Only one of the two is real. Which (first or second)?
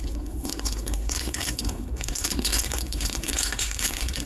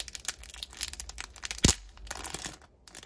second